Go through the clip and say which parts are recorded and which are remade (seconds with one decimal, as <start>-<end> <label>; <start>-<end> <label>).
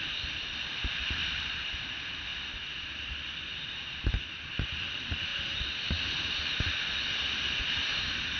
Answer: 0.0-1.2 recorded; 1.2-1.8 remade; 1.8-2.3 recorded; 2.3-3.0 remade; 3.0-3.5 recorded; 3.5-4.1 remade; 4.1-8.4 recorded